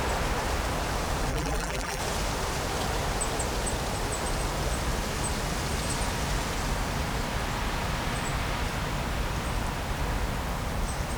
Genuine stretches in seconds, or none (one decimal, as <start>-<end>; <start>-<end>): 0.0-1.3; 2.0-11.2